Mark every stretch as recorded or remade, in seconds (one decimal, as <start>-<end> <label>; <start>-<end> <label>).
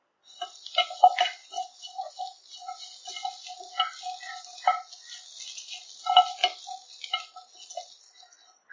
0.0-1.4 recorded; 1.4-2.1 remade; 2.1-8.7 recorded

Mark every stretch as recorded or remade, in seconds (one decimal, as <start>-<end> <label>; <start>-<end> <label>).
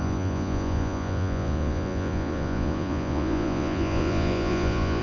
0.0-5.0 remade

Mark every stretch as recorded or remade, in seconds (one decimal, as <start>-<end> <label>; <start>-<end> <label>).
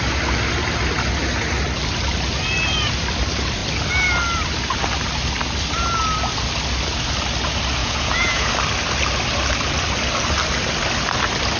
0.0-7.8 recorded; 7.8-8.5 remade; 8.5-11.6 recorded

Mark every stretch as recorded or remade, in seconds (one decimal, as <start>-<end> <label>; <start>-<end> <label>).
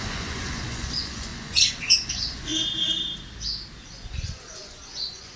0.0-2.5 remade; 2.5-3.7 recorded; 3.7-5.4 remade